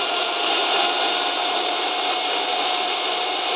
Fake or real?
fake